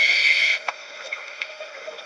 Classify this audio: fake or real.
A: fake